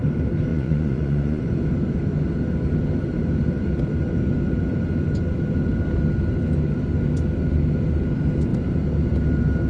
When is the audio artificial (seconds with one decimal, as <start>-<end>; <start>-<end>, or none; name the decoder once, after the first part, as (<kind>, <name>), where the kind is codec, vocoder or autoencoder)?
0.5-1.4 (vocoder, Vocos)